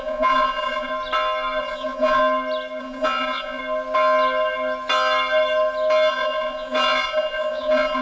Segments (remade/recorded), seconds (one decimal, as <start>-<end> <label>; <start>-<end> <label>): 0.0-0.9 remade; 0.9-1.6 recorded; 1.6-2.2 remade; 2.2-2.8 recorded; 2.8-3.6 remade; 3.6-6.1 recorded; 6.1-8.0 remade